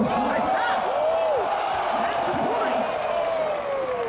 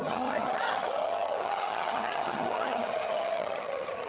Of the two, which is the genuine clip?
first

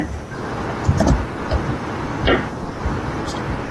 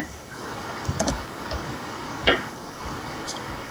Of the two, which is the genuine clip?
first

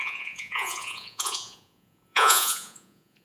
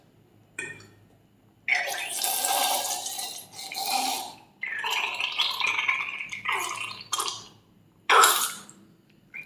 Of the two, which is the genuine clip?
second